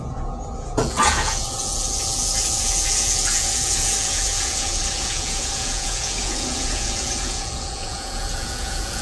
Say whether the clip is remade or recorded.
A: remade